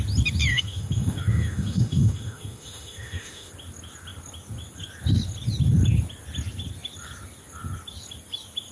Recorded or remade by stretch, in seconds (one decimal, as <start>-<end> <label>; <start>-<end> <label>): 0.0-0.5 recorded; 0.5-3.5 remade; 3.5-8.7 recorded